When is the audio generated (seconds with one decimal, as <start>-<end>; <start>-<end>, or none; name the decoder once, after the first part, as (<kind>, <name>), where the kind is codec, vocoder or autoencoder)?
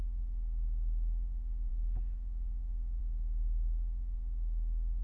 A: none